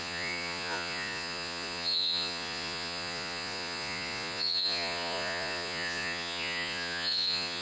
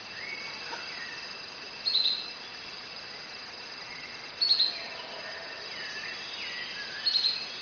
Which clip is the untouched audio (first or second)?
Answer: second